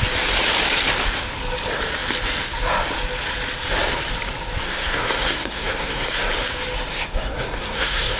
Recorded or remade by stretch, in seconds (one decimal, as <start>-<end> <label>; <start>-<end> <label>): 0.0-4.6 recorded; 4.6-6.3 remade; 6.3-6.9 recorded; 6.9-8.2 remade